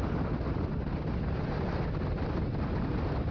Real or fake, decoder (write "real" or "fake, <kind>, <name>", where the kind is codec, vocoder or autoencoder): real